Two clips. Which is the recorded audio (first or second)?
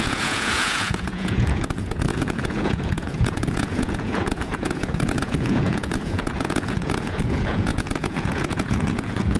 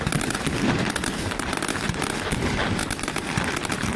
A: second